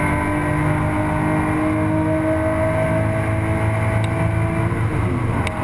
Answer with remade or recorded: recorded